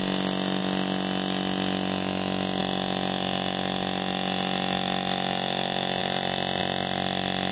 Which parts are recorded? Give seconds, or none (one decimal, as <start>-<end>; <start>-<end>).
0.0-7.5